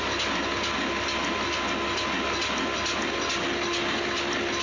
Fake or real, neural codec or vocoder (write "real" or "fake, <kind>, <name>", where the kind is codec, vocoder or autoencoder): real